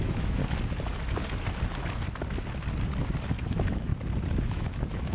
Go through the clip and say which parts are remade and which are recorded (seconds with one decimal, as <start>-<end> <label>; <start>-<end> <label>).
0.0-0.4 remade; 0.4-3.5 recorded; 3.5-3.9 remade; 3.9-4.4 recorded; 4.4-5.1 remade